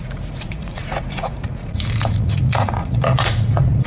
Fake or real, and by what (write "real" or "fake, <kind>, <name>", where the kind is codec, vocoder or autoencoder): fake, vocoder, Vocos